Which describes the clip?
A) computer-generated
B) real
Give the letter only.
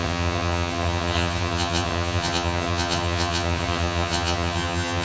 A